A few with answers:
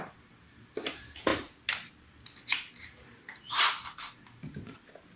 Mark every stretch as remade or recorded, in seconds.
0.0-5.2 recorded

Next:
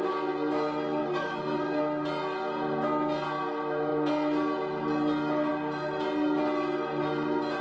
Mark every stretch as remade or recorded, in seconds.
0.0-1.0 recorded; 1.0-1.8 remade; 1.8-7.6 recorded

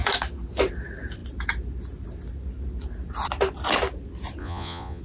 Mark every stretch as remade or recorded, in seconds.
0.0-4.4 recorded; 4.4-5.0 remade

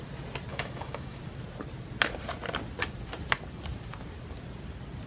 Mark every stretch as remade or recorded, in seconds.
0.0-0.5 recorded; 0.5-1.2 remade; 1.2-5.1 recorded

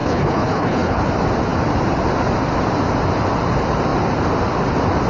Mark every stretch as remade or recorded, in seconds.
0.0-1.1 remade; 1.1-5.1 recorded